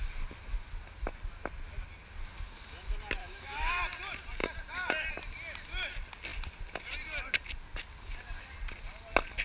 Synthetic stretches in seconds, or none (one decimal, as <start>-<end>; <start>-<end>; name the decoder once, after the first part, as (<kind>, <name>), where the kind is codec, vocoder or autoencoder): 3.2-3.8 (autoencoder, DAC-VAE)